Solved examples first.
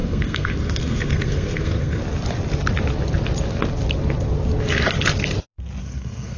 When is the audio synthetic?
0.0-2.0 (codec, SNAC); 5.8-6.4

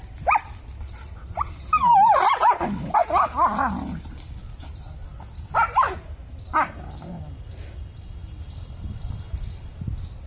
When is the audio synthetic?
none

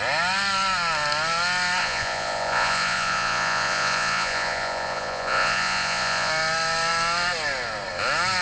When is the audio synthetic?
1.8-6.3 (vocoder, Vocos)

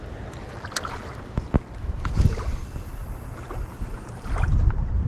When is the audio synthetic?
none

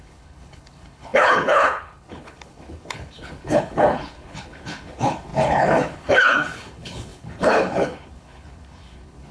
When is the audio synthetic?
0.0-9.3 (codec, HILCodec)

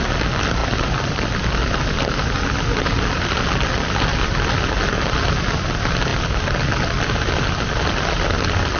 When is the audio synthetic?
none

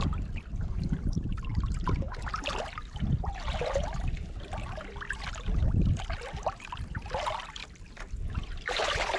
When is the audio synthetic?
none